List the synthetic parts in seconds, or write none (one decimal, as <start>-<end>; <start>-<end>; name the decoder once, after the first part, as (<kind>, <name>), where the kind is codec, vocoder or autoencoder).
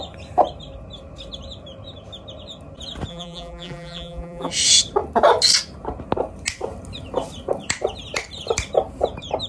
3.1-4.5 (vocoder, BigVGAN v2)